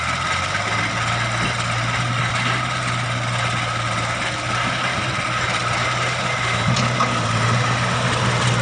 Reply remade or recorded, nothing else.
recorded